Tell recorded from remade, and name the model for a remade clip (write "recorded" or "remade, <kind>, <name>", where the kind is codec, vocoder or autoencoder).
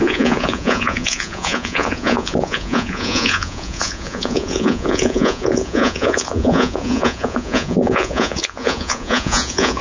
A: remade, vocoder, Vocos